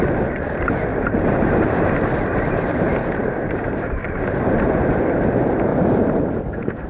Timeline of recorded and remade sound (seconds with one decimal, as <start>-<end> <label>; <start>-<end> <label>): 0.0-0.9 recorded; 0.9-5.0 remade; 5.0-5.7 recorded; 5.7-6.2 remade; 6.2-6.9 recorded